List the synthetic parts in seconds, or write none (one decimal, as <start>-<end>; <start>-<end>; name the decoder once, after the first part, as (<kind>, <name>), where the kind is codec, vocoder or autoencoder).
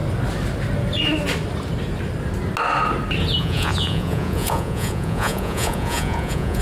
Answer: 3.4-6.6 (vocoder, Vocos)